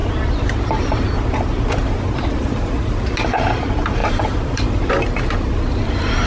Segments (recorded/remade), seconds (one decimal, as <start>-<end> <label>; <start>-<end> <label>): 0.0-4.0 recorded; 4.0-4.9 remade; 4.9-6.3 recorded